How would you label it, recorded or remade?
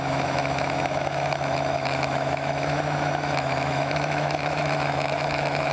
remade